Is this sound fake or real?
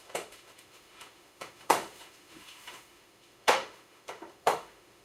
fake